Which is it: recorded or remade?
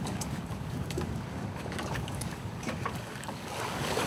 remade